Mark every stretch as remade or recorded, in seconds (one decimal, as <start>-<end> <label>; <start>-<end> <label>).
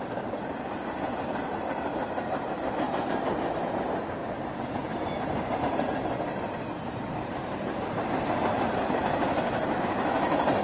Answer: 0.0-10.6 recorded